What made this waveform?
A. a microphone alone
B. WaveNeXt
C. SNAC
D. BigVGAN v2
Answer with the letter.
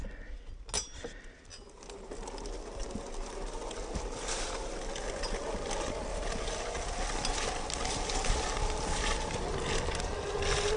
A